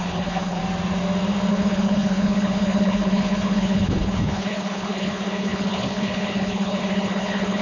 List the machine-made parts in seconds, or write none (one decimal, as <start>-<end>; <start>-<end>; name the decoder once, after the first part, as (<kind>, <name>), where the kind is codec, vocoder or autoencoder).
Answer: 0.0-0.6 (codec, HILCodec); 1.5-7.6